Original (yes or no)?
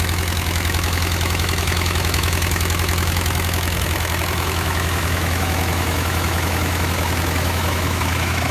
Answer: no